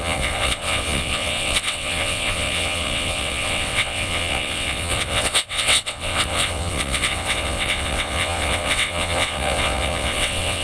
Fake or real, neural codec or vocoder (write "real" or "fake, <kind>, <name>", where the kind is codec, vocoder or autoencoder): fake, vocoder, WaveNeXt